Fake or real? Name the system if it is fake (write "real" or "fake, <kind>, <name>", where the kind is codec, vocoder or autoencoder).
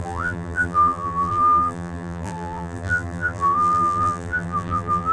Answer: fake, vocoder, BigVGAN v2